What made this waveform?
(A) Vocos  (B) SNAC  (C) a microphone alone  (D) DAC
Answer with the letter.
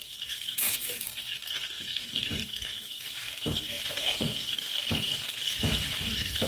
D